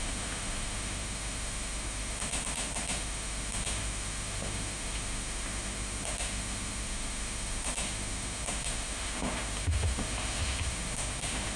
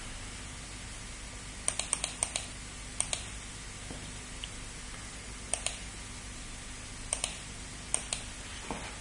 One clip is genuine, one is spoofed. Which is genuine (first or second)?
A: second